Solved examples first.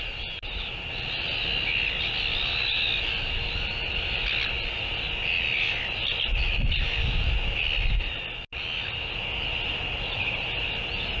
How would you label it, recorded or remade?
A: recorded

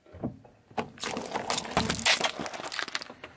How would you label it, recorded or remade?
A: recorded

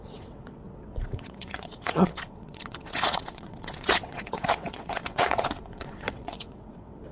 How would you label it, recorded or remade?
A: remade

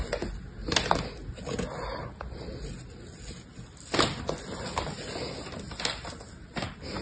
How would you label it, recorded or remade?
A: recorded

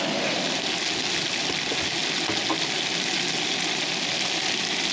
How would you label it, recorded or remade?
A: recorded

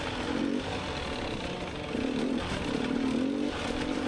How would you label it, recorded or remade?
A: recorded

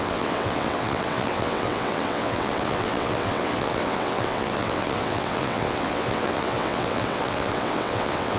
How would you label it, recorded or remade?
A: remade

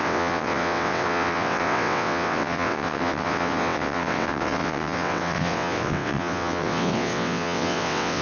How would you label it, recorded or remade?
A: remade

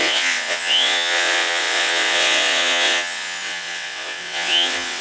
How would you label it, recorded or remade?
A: remade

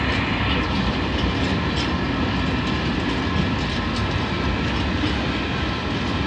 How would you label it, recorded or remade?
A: recorded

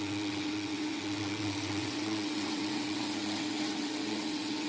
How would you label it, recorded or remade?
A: remade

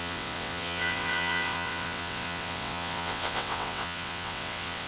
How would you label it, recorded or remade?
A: remade